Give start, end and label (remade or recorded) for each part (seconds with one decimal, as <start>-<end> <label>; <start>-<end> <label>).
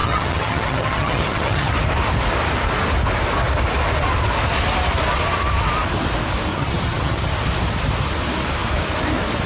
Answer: 0.0-1.7 remade; 1.7-6.5 recorded; 6.5-7.3 remade; 7.3-9.5 recorded